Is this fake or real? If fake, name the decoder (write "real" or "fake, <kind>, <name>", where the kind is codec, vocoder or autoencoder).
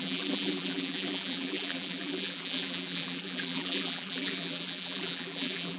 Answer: fake, vocoder, BigVGAN v2